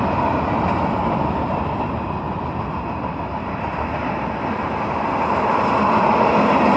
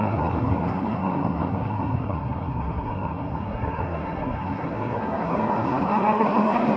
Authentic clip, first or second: first